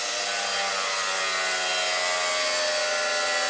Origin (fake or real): real